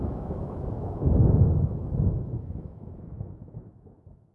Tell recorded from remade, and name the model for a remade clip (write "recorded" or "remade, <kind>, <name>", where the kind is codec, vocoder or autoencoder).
remade, autoencoder, DAC-VAE